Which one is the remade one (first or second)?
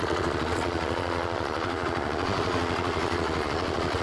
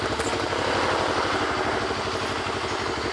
first